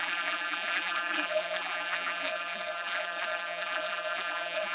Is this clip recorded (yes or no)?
no